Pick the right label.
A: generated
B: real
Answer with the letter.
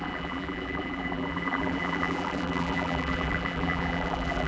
A